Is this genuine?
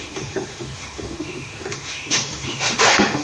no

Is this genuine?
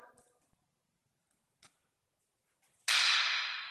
yes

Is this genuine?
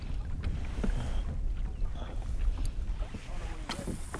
yes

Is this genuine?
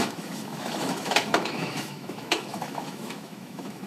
no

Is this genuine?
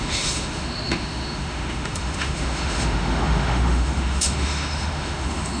no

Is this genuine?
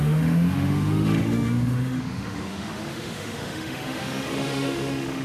no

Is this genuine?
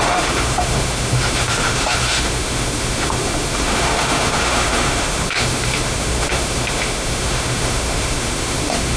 no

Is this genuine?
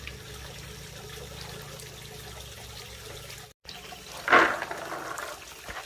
yes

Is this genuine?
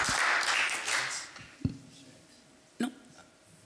yes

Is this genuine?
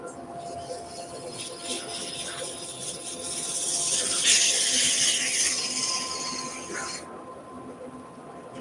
yes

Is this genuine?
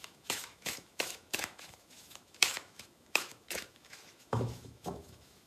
no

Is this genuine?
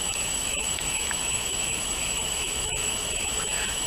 no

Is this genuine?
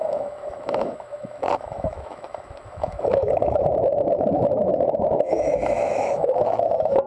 no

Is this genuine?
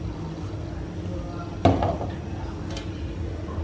yes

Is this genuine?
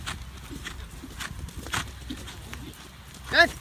yes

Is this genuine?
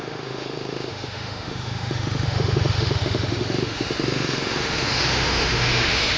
no